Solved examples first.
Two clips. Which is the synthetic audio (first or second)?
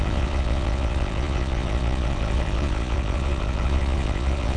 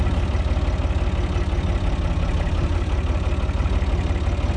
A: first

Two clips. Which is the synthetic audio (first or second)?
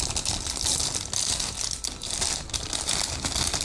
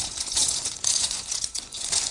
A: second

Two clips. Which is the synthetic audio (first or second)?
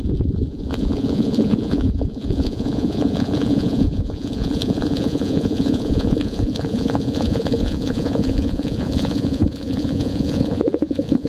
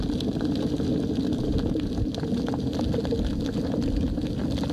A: first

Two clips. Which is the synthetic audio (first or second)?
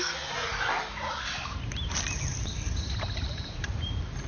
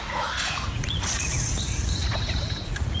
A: second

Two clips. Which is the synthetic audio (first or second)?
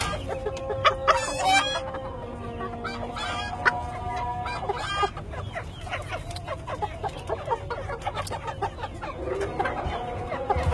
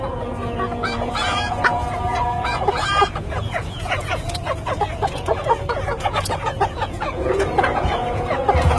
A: second